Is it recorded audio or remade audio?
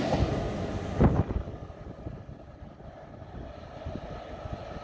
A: recorded